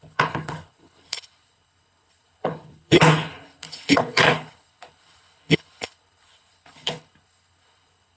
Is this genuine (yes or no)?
no